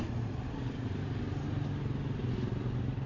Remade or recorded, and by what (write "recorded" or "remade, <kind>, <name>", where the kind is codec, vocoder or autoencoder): recorded